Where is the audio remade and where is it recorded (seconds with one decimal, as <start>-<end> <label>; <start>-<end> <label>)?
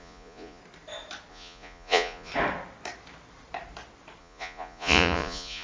0.0-0.6 remade; 0.6-1.3 recorded; 1.3-2.3 remade; 2.3-4.2 recorded; 4.2-5.6 remade